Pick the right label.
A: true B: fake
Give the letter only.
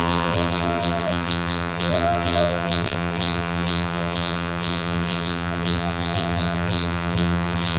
B